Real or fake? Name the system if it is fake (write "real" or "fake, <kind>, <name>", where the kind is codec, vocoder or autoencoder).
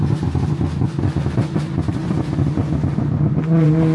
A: real